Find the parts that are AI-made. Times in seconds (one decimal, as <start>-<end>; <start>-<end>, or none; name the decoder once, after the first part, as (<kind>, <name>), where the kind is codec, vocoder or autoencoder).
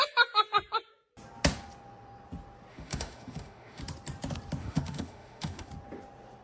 2.7-3.8 (autoencoder, DAC-VAE); 4.6-5.7